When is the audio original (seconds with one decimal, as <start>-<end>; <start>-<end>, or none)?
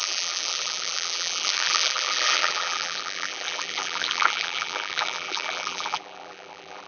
none